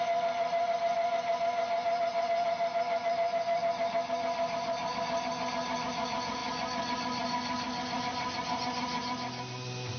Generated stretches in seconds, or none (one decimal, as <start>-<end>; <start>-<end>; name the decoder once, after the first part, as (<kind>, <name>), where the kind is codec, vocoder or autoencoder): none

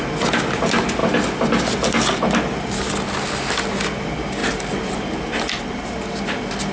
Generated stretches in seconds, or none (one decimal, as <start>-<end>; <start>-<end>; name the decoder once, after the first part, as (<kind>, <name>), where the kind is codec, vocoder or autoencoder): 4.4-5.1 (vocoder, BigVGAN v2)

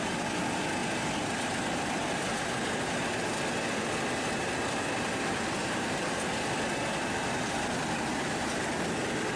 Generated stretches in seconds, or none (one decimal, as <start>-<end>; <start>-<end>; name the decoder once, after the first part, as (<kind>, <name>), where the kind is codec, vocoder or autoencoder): none